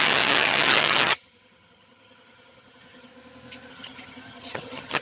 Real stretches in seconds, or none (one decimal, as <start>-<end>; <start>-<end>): 3.1-3.7